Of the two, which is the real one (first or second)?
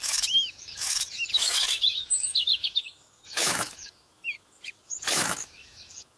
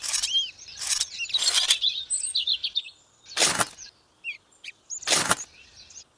second